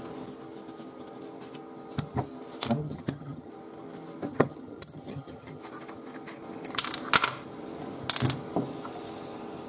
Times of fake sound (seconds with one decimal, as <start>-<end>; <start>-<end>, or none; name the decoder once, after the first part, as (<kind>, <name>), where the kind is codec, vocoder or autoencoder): 2.8-3.5 (vocoder, HiFi-GAN); 4.3-5.6

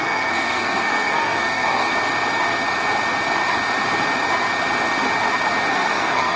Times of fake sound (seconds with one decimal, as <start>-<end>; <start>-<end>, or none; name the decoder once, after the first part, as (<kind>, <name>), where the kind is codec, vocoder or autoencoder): 0.0-1.9 (codec, SNAC); 5.7-6.4

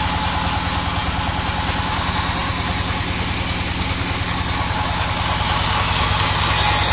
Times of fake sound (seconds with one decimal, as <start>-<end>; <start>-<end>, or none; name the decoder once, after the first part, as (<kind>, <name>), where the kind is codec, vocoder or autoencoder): none

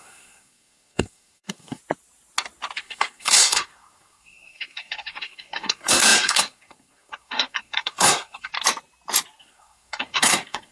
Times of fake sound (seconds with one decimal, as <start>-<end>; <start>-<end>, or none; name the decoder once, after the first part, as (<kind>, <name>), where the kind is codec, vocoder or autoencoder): 0.0-1.8 (codec, SNAC); 2.8-8.5; 9.4-10.7

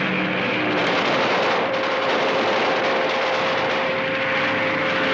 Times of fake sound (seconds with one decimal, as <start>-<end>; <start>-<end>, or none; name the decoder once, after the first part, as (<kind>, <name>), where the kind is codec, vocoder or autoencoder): 0.8-3.9 (vocoder, BigVGAN v2)